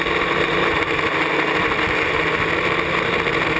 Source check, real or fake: real